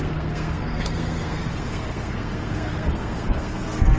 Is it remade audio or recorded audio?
remade